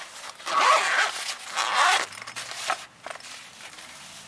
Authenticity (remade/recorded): recorded